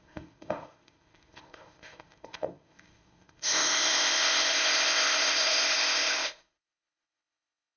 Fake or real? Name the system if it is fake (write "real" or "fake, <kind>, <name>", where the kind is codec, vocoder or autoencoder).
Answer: fake, codec, ZipCodec